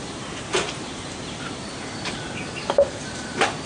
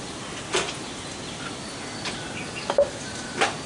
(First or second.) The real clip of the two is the second